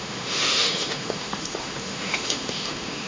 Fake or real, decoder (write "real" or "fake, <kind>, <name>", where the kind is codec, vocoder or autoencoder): fake, autoencoder, DAC-VAE